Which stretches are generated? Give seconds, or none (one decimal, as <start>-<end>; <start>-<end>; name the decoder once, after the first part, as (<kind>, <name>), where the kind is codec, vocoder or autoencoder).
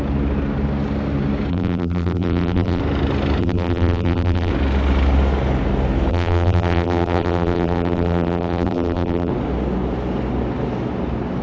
1.5-2.8 (vocoder, BigVGAN v2); 3.4-4.5; 6.1-9.3